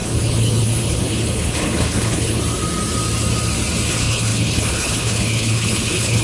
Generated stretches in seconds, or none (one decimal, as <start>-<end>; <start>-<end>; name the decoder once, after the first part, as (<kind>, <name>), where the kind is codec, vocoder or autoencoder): 0.0-2.4 (codec, HILCodec); 3.9-6.2